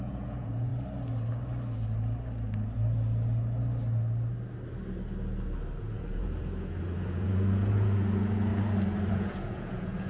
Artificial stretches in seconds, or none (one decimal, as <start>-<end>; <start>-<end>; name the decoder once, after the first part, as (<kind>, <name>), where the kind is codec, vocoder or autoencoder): 0.0-0.7 (vocoder, Vocos); 5.8-8.5; 9.1-10.1